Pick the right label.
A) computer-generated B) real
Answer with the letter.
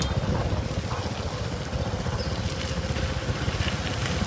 B